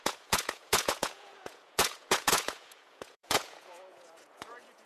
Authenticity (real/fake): fake